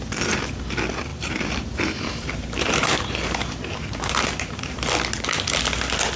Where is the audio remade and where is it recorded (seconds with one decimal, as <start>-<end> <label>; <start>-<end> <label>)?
0.0-1.1 recorded; 1.1-4.8 remade; 4.8-6.2 recorded